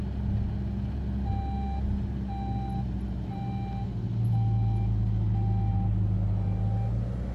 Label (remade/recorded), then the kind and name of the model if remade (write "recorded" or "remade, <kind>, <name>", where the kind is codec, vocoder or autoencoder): recorded